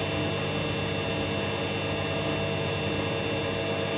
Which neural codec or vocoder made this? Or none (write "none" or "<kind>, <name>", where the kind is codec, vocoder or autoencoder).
none